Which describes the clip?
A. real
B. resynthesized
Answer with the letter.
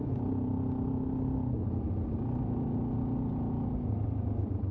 A